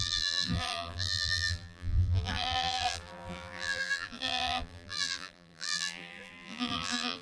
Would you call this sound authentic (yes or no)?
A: no